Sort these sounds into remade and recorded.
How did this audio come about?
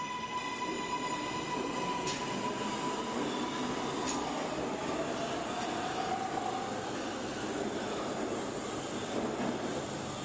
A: recorded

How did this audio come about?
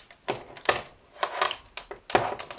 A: recorded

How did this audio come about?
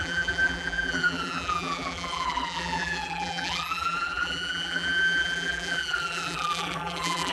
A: remade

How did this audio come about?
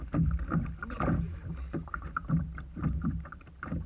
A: recorded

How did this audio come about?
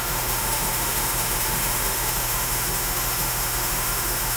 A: remade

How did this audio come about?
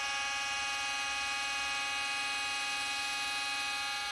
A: recorded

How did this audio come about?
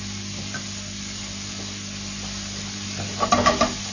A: recorded